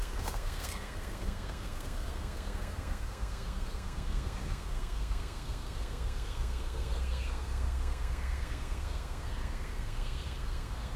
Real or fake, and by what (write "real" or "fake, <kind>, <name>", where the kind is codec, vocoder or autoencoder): fake, codec, SNAC